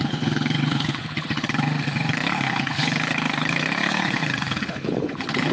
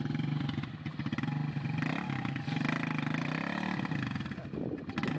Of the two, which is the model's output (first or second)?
first